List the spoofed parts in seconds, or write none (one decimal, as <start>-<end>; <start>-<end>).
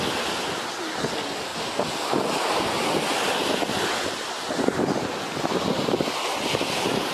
none